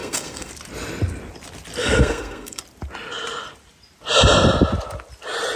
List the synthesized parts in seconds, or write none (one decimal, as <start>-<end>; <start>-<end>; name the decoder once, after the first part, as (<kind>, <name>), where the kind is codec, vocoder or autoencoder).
0.0-0.5 (codec, SNAC); 1.8-2.6